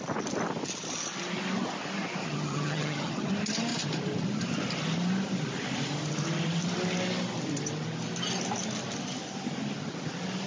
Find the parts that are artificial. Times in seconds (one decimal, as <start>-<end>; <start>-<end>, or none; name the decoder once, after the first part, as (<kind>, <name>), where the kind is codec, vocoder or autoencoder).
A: 2.2-3.3 (vocoder, HiFi-GAN)